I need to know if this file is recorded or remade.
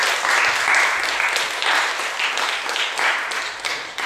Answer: recorded